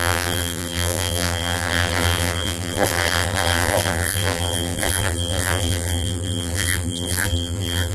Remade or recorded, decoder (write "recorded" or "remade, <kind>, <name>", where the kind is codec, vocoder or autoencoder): remade, vocoder, BigVGAN v2